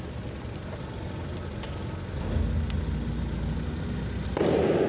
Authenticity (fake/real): real